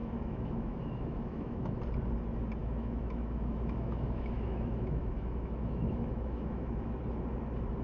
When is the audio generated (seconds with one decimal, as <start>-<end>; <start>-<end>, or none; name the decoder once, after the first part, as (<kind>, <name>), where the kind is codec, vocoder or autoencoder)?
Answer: 0.0-1.8 (autoencoder, DAC-VAE); 2.6-7.0